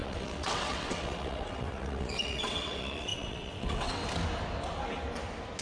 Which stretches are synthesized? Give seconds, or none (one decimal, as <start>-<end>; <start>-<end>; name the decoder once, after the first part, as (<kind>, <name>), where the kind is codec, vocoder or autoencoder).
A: 0.0-4.0 (vocoder, WaveNeXt)